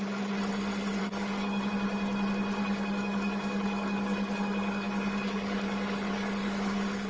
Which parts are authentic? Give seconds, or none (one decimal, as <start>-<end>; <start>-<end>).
0.0-1.0; 1.7-2.6